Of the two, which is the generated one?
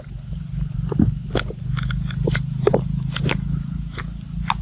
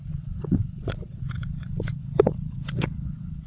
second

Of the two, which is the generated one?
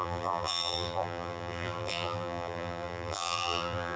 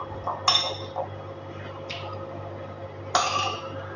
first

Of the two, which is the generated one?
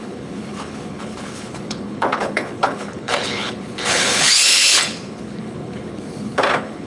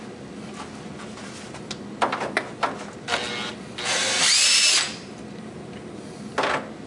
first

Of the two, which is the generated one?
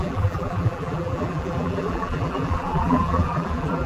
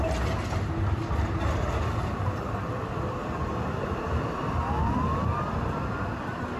first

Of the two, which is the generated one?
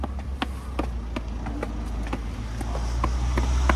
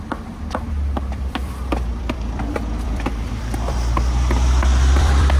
second